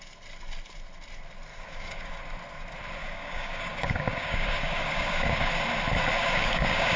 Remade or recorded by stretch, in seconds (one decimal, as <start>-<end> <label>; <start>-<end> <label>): 0.0-1.5 recorded; 1.5-2.1 remade; 2.1-3.0 recorded; 3.0-5.5 remade; 5.5-6.2 recorded; 6.2-7.0 remade